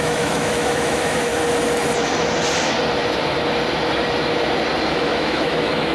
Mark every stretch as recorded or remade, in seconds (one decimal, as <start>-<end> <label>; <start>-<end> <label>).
0.0-1.3 remade; 1.3-4.8 recorded; 4.8-5.9 remade